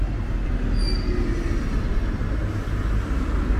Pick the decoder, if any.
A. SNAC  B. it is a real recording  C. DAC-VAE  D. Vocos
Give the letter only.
B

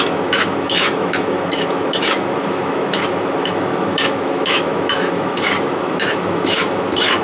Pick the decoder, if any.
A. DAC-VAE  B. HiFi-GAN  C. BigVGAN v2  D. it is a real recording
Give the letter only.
A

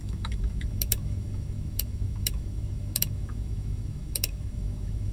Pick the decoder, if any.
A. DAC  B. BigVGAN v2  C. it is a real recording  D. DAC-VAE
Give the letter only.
D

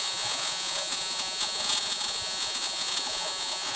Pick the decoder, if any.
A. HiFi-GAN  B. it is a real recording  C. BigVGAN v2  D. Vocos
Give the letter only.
D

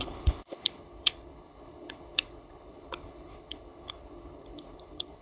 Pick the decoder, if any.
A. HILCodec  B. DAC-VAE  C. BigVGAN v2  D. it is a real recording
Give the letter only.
A